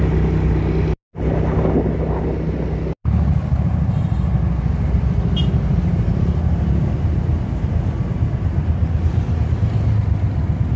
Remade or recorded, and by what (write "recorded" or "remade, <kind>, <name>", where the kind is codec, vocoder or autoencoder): recorded